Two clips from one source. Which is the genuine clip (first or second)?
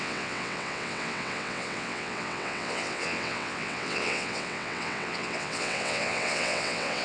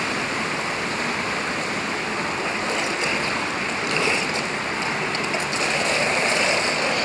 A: second